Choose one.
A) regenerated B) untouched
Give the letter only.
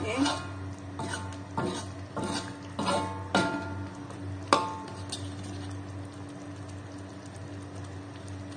B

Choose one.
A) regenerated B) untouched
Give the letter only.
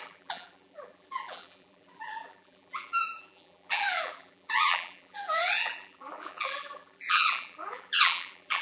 A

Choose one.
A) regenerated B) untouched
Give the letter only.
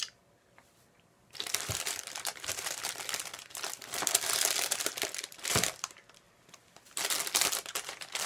A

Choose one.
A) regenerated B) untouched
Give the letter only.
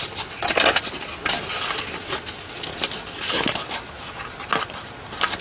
B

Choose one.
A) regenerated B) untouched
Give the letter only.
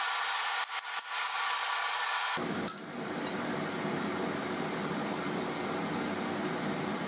B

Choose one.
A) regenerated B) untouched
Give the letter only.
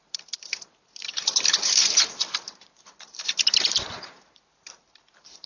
A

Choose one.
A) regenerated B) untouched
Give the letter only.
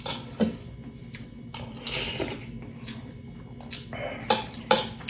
B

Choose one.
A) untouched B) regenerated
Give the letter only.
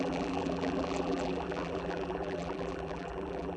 B